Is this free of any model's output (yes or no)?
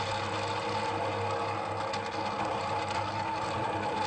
yes